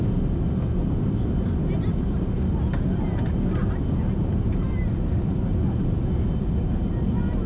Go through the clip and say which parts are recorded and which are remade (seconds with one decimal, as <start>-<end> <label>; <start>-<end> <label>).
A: 0.0-7.5 recorded